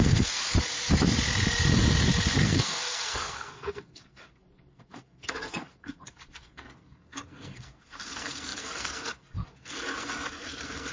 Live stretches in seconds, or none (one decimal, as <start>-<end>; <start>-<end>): 0.4-2.4